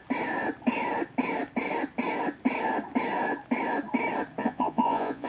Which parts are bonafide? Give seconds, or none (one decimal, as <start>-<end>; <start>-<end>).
0.0-4.4